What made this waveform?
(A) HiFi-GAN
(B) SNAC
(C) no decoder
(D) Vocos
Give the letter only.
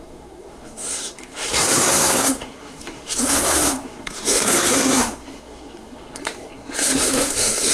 B